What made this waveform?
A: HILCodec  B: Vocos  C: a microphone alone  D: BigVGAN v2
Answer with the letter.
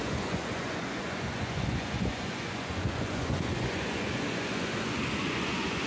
B